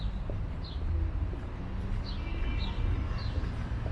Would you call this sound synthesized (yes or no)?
no